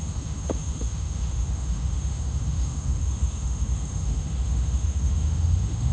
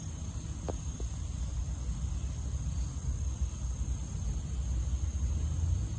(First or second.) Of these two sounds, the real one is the second